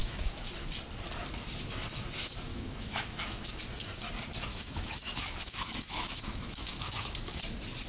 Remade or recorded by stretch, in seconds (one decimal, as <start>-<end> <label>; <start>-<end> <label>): 0.0-0.5 remade; 0.5-2.5 recorded; 2.5-3.6 remade; 3.6-4.5 recorded; 4.5-7.4 remade; 7.4-7.9 recorded